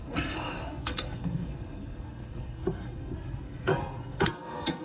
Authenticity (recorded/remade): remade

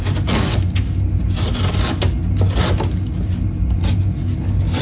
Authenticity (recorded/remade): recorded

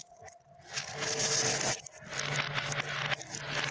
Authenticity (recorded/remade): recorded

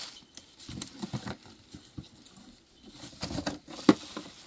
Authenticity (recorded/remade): recorded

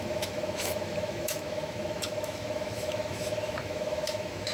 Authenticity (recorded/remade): remade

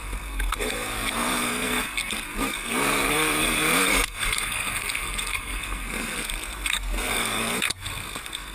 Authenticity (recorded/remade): remade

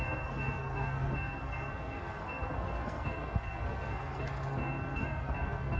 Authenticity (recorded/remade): remade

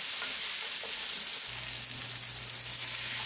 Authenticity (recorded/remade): recorded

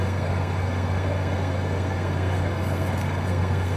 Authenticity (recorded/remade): remade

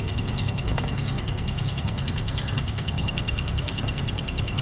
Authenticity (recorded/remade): remade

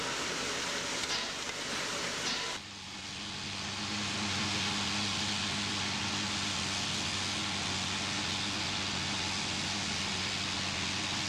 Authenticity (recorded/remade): recorded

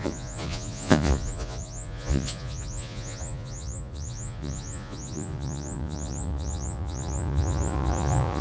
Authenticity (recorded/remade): remade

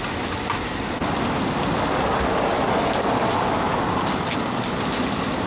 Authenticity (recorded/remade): recorded